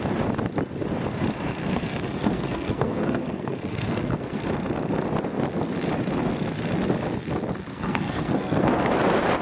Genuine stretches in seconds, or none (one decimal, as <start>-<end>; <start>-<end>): 0.0-1.6; 4.5-7.7; 8.9-9.4